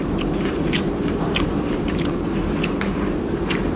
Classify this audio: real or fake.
fake